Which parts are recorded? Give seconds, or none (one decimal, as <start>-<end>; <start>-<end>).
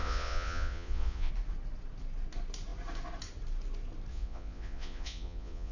1.3-4.1